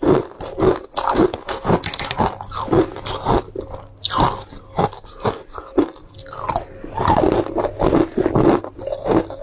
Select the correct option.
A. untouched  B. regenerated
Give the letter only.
A